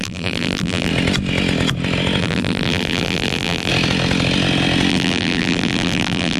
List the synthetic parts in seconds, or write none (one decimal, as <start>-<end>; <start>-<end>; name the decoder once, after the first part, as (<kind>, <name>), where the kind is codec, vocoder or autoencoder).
0.0-0.9 (vocoder, BigVGAN v2); 2.2-3.7; 4.9-6.4